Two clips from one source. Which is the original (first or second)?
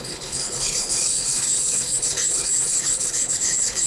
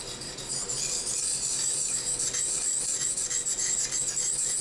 second